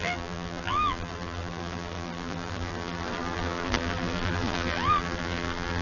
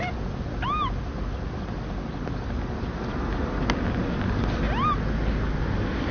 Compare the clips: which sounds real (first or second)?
second